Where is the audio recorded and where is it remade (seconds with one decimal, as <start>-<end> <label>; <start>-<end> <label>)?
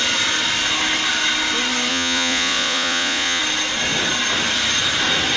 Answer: 0.0-1.9 recorded; 1.9-3.4 remade; 3.4-5.4 recorded